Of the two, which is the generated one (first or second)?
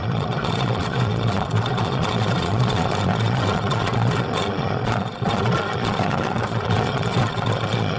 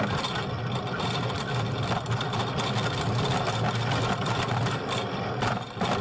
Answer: first